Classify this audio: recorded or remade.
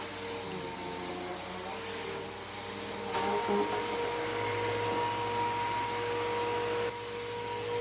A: recorded